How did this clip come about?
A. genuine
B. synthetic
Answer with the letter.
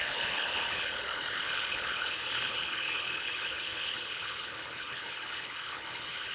B